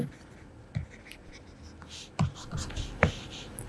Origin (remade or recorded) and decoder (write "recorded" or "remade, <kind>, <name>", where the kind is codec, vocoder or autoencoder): recorded